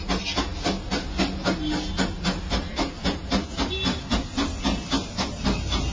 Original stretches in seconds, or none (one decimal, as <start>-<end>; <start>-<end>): 0.0-5.9